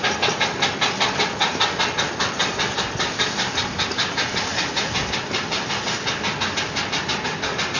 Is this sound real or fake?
real